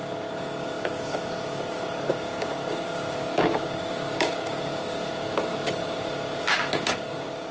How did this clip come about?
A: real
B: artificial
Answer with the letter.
B